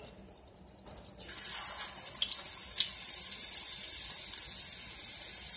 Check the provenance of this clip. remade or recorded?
recorded